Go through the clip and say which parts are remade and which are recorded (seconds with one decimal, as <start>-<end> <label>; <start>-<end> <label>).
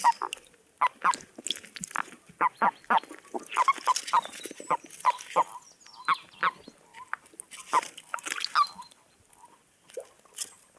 0.0-10.8 recorded